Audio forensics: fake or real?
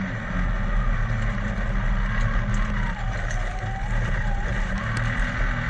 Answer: real